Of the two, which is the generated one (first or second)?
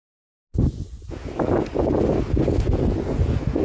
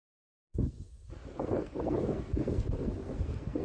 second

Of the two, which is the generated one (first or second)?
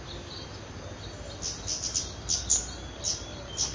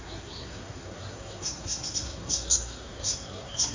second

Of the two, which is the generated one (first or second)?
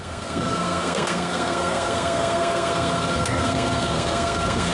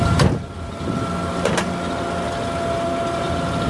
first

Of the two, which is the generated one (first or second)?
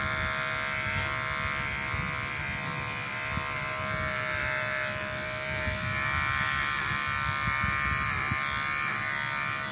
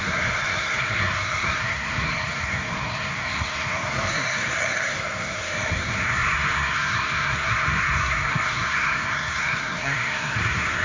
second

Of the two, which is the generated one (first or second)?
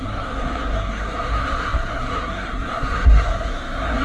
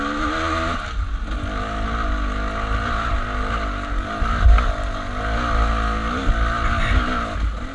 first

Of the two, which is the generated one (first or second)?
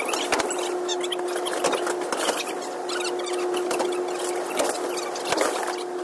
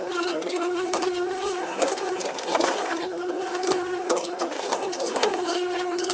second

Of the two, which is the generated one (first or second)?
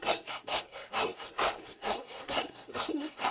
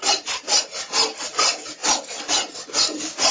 first